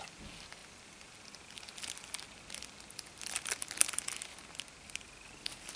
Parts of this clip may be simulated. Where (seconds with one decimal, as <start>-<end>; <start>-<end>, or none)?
none